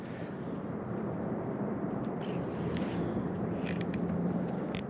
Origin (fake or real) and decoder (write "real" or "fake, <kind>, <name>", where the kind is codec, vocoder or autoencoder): fake, vocoder, BigVGAN v2